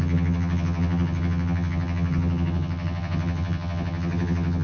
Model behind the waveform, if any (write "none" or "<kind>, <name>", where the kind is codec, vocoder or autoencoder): vocoder, HiFi-GAN